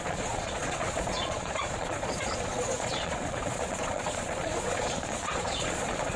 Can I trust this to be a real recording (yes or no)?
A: no